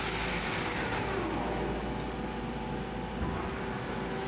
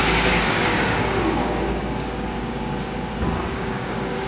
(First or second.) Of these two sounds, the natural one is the first